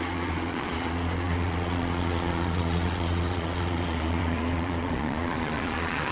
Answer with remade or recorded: remade